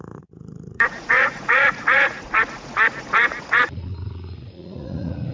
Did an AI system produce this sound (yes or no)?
yes